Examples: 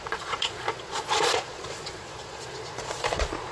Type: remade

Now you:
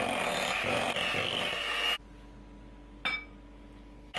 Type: recorded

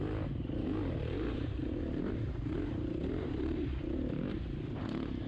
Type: remade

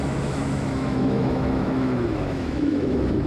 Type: remade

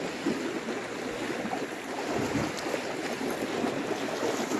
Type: recorded